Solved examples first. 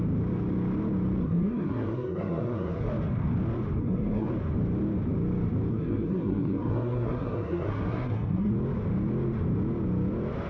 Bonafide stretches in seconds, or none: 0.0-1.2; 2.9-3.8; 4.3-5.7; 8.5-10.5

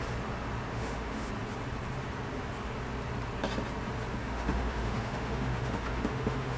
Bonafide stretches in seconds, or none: 0.0-0.7; 1.3-4.2

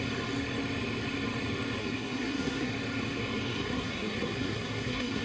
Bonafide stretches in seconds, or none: 0.0-1.8; 2.7-3.5

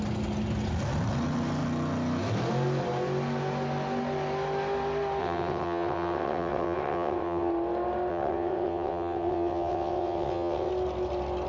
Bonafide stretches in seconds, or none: 0.0-5.2; 7.5-8.1; 10.7-11.5